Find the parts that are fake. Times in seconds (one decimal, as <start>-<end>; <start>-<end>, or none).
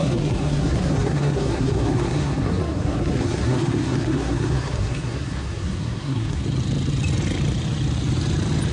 0.0-6.4